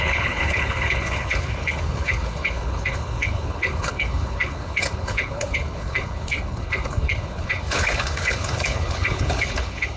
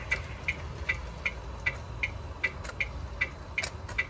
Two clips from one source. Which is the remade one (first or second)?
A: first